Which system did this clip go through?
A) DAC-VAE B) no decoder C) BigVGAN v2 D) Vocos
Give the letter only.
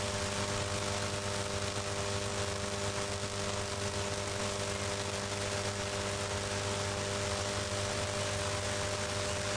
B